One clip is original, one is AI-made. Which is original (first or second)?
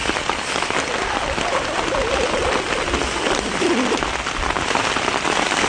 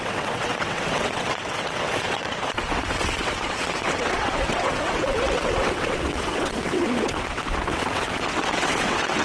first